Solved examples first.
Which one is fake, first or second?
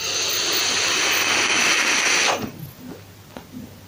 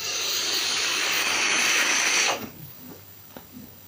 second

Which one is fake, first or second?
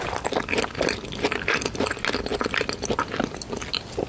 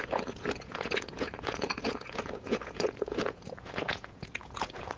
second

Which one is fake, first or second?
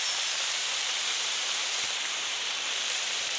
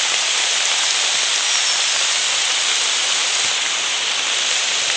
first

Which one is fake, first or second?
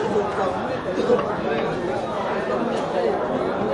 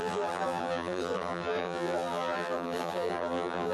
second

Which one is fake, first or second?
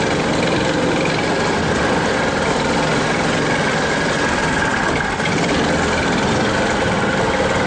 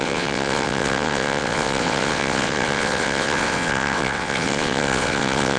second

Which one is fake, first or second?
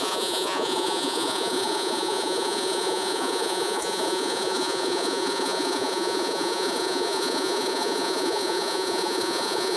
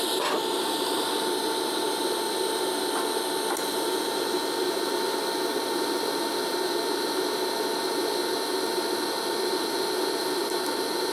first